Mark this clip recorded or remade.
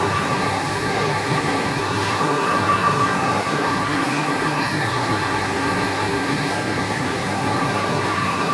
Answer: remade